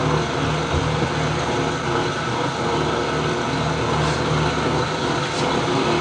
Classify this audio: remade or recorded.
recorded